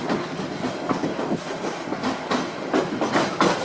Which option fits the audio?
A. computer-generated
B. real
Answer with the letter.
B